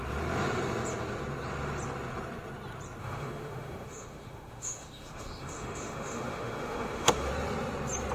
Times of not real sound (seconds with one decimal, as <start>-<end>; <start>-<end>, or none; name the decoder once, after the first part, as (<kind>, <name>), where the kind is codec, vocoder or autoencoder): 3.0-7.3 (autoencoder, DAC-VAE)